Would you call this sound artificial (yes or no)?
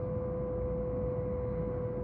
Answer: no